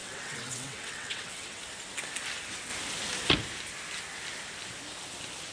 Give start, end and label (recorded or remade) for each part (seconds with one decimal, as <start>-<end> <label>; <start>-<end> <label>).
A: 0.0-1.6 remade; 1.6-5.5 recorded